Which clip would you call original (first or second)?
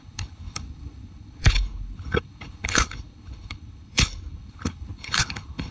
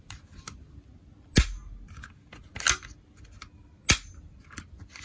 second